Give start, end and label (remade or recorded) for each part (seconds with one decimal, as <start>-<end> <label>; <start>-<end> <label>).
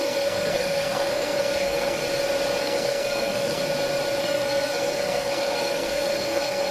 0.0-2.0 remade; 2.0-2.6 recorded; 2.6-3.6 remade; 3.6-4.2 recorded; 4.2-6.7 remade